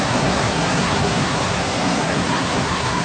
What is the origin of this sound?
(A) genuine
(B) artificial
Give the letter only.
B